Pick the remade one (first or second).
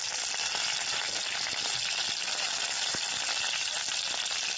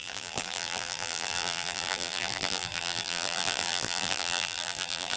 second